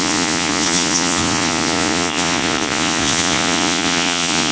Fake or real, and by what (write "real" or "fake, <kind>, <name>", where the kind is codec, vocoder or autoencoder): fake, vocoder, Vocos